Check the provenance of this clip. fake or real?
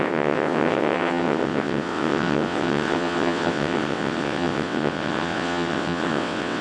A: fake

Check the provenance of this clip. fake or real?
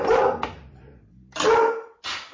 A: real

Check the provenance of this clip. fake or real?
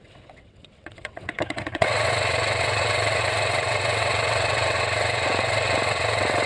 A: fake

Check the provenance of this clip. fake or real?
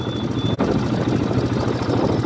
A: real